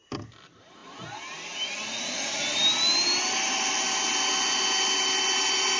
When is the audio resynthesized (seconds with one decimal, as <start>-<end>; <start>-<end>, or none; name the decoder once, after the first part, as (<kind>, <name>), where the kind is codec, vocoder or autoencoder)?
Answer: none